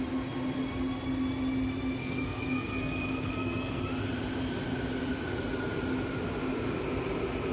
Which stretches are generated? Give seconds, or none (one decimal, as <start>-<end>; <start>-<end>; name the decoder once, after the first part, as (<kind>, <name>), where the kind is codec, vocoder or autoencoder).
2.0-3.8 (codec, SNAC)